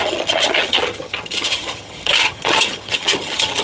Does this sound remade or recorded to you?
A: remade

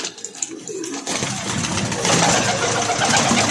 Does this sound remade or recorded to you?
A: recorded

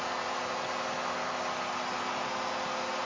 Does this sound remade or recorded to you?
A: recorded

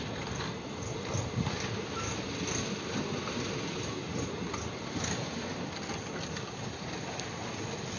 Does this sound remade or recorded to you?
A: recorded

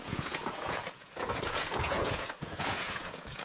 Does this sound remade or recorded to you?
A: remade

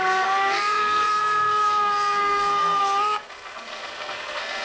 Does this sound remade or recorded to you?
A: remade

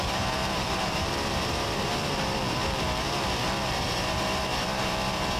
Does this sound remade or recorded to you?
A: remade